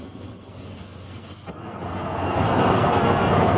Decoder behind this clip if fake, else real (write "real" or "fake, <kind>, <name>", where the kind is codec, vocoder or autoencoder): fake, codec, SNAC